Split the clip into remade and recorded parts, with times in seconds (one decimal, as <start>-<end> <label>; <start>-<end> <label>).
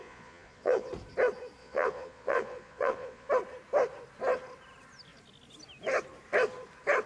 0.0-0.9 remade; 0.9-1.6 recorded; 1.6-3.3 remade; 3.3-7.1 recorded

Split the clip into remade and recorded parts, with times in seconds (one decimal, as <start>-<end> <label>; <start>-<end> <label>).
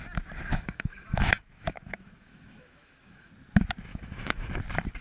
0.0-0.5 recorded; 0.5-3.3 remade; 3.3-3.9 recorded; 3.9-4.5 remade; 4.5-5.0 recorded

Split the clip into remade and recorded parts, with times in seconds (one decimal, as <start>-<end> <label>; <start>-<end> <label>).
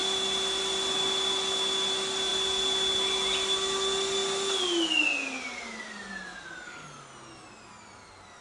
0.0-8.4 recorded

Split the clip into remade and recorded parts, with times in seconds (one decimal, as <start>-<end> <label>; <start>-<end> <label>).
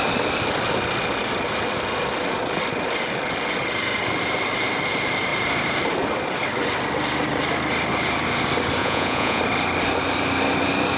0.0-8.8 recorded; 8.8-9.4 remade; 9.4-11.0 recorded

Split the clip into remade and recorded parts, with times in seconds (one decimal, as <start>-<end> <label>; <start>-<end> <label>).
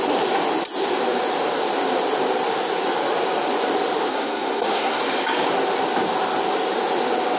0.0-4.1 recorded; 4.1-5.0 remade; 5.0-7.4 recorded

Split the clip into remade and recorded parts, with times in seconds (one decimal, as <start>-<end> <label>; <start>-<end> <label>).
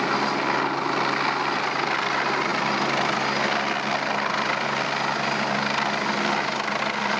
0.0-7.2 recorded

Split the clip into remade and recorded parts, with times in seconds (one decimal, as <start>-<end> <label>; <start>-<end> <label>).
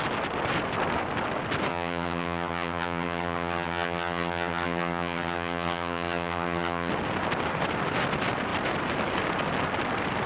0.0-1.7 recorded; 1.7-6.9 remade; 6.9-10.3 recorded